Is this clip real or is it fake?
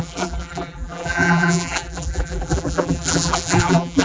fake